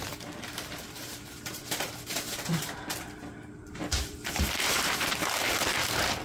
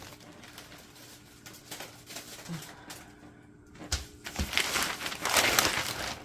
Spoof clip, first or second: first